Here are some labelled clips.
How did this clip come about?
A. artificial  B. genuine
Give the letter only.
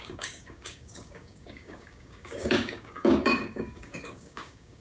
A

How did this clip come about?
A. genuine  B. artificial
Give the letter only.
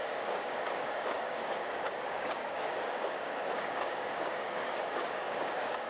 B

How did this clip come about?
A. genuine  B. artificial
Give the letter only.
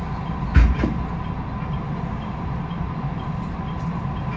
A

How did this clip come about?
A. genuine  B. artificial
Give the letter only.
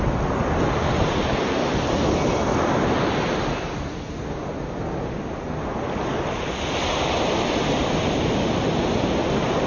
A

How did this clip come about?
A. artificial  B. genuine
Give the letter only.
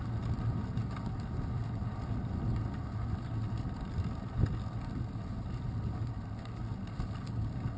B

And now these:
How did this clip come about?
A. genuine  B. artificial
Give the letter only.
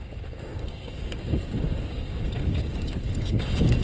B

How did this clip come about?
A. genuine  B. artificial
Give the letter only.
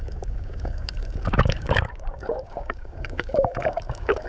B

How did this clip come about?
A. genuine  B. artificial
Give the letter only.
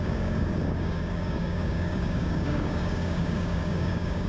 B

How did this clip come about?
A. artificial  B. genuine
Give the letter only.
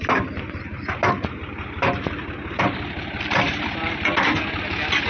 B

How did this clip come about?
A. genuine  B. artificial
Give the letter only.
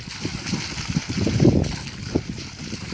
A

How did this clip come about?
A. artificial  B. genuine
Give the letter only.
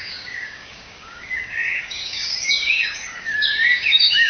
A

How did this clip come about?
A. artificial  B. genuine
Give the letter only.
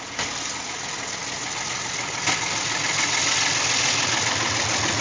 B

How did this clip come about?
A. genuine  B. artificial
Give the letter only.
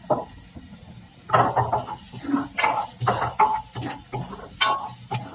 A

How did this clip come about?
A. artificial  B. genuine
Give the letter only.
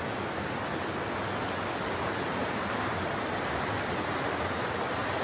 B